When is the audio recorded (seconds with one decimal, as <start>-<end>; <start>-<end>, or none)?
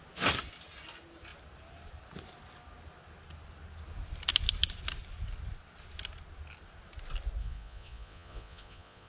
0.0-7.4